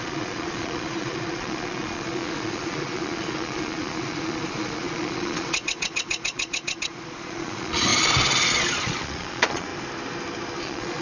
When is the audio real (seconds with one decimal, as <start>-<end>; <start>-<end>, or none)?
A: 7.9-8.5; 9.7-10.6